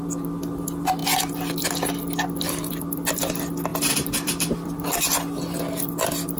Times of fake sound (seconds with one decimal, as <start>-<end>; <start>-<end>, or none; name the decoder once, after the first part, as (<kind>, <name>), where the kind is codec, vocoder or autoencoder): none